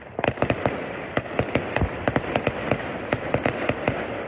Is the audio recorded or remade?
recorded